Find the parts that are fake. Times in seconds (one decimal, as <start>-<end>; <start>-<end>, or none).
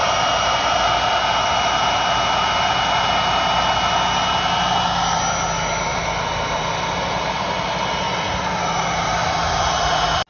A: 0.0-1.1; 5.9-8.8